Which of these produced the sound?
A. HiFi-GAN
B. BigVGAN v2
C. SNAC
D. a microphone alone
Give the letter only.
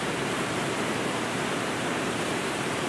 B